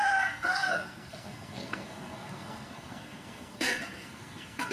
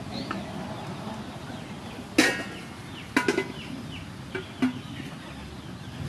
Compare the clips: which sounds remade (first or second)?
first